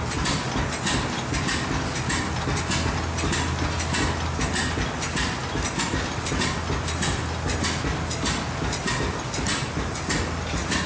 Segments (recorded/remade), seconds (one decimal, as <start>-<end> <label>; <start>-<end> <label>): 0.0-10.9 recorded